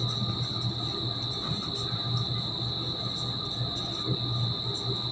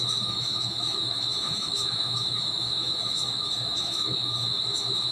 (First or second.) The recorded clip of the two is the first